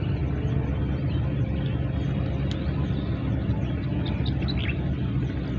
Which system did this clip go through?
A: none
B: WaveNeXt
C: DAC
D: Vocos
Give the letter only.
A